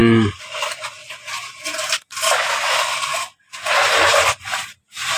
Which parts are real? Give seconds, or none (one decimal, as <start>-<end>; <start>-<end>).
0.6-5.2